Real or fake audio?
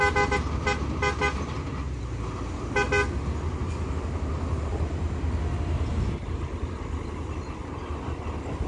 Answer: real